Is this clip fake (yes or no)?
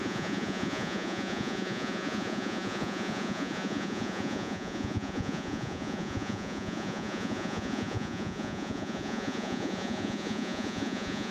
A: yes